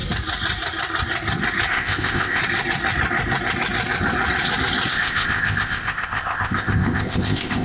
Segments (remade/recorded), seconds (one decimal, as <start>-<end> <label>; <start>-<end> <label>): 0.0-1.7 recorded; 1.7-2.4 remade; 2.4-4.9 recorded; 4.9-7.6 remade